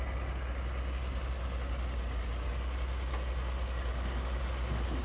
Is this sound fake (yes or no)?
no